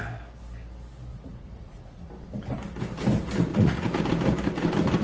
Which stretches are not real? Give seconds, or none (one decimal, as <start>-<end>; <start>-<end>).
1.1-2.1; 3.5-4.0